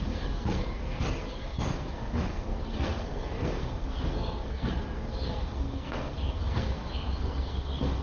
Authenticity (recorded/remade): remade